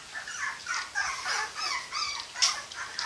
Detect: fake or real real